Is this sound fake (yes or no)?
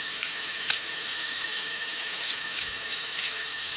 yes